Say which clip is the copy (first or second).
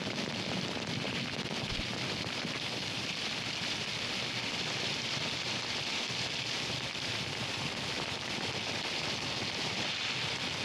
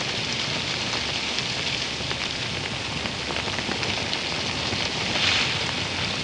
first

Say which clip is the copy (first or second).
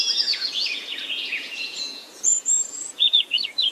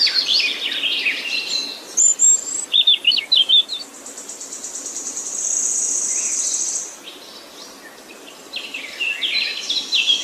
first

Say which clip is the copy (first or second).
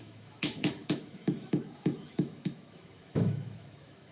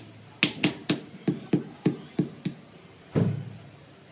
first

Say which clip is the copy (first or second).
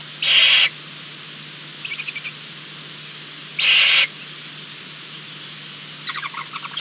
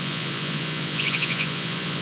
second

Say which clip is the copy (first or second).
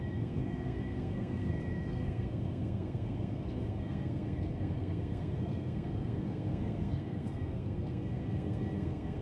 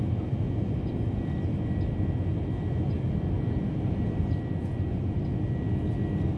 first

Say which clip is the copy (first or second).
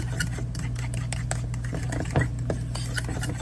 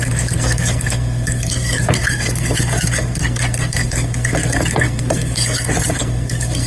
second